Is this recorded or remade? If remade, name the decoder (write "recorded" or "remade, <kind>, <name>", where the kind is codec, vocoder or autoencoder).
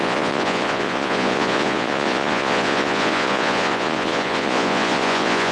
remade, vocoder, Vocos